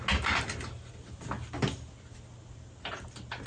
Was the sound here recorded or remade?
recorded